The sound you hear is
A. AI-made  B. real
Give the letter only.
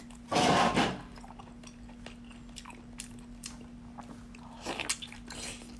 B